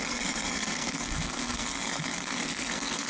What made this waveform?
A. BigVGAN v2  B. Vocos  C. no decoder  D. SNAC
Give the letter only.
D